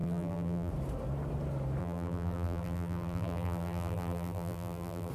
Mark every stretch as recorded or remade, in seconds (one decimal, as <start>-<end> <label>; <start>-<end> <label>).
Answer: 0.0-0.7 remade; 0.7-1.8 recorded; 1.8-5.1 remade